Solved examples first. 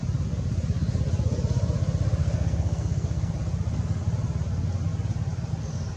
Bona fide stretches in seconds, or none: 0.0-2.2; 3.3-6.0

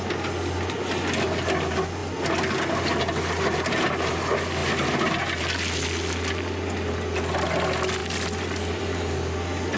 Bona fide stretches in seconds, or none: 0.0-9.8

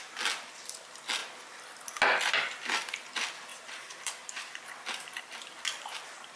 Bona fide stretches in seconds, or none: 0.0-3.5; 5.3-6.4

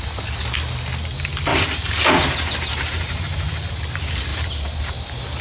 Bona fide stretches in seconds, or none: 0.0-1.5; 3.7-4.3; 4.9-5.4

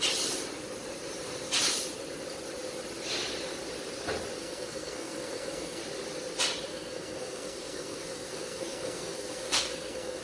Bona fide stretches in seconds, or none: 0.0-4.4; 5.8-6.7

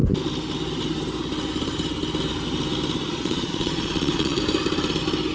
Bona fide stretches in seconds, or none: 0.0-3.1; 4.4-5.3

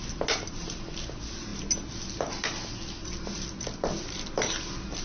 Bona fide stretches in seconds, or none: 0.0-5.0

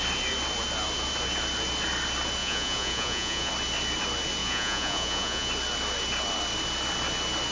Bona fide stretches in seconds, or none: 0.0-2.4; 3.5-4.4; 5.5-7.5